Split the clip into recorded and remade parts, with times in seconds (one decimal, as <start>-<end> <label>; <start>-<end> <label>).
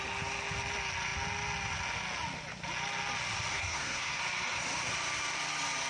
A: 0.0-3.5 recorded; 3.5-4.2 remade; 4.2-5.9 recorded